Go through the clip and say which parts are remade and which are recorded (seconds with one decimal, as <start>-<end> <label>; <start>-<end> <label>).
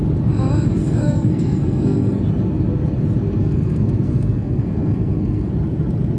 0.0-0.8 recorded; 0.8-2.2 remade; 2.2-3.4 recorded; 3.4-5.5 remade; 5.5-6.2 recorded